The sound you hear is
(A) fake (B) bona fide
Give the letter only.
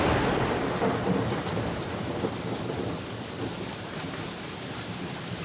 B